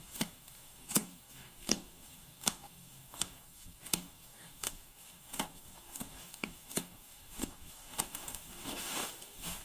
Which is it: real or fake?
fake